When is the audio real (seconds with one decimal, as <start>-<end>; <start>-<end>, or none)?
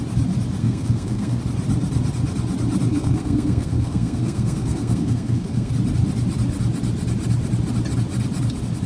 0.0-0.6; 1.4-2.9; 5.7-8.9